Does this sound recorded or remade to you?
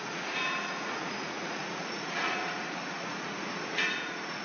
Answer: remade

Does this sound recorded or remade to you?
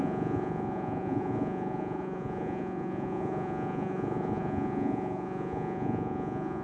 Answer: remade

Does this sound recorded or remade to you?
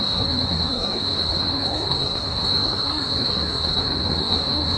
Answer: remade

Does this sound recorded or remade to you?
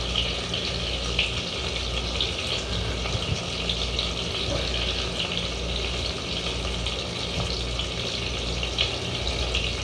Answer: recorded